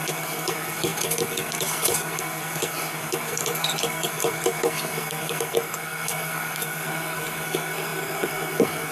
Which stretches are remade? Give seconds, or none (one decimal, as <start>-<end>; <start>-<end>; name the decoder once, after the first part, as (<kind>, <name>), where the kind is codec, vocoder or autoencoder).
0.0-8.9 (codec, SNAC)